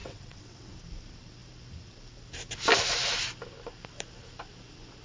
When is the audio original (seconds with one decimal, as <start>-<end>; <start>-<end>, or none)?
0.7-5.0